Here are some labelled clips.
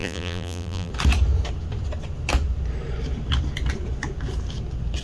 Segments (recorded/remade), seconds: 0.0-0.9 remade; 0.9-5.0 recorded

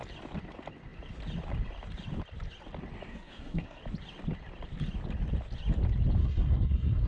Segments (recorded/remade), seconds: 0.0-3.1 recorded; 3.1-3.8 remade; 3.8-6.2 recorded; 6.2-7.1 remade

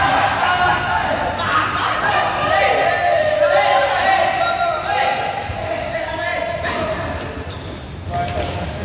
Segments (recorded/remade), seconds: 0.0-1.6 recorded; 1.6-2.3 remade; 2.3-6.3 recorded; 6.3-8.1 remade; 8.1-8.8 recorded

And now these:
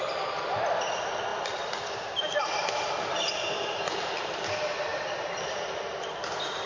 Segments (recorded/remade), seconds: 0.0-6.7 recorded

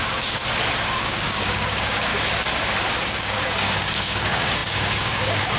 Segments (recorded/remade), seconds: 0.0-0.4 remade; 0.4-1.0 recorded; 1.0-2.1 remade; 2.1-3.0 recorded; 3.0-5.6 remade

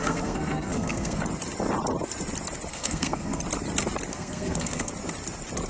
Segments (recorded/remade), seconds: 0.0-1.2 remade; 1.2-2.7 recorded; 2.7-3.4 remade; 3.4-4.1 recorded; 4.1-4.9 remade; 4.9-5.7 recorded